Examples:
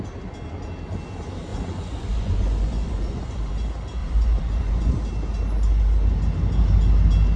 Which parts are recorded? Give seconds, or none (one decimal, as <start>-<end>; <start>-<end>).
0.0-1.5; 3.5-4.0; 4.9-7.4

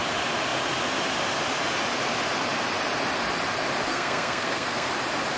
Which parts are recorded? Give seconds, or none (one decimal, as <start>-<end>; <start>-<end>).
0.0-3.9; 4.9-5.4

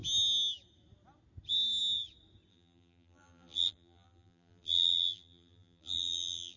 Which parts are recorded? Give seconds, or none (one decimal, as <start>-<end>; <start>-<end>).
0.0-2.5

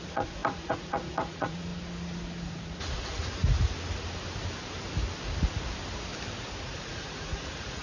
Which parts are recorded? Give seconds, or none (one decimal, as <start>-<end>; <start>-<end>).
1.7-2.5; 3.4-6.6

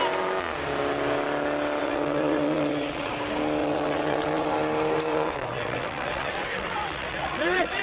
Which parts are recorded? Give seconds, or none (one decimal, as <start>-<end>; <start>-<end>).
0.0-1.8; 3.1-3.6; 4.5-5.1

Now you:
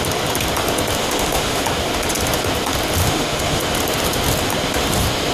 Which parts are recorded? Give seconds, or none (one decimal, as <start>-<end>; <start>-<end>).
0.0-1.0; 1.6-3.0; 3.6-5.3

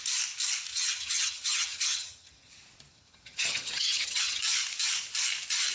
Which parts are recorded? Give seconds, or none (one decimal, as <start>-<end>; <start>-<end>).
0.0-0.7; 2.5-2.9; 4.4-5.7